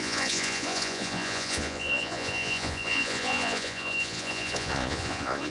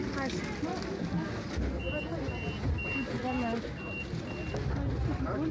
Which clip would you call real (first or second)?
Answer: second